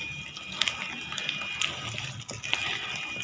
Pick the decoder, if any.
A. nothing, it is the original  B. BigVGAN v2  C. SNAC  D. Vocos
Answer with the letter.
A